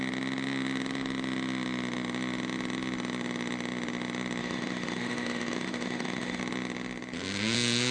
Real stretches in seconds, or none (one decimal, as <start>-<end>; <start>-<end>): 0.0-4.4; 6.4-7.9